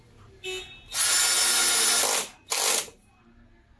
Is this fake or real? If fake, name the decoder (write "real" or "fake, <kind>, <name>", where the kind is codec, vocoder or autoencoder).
real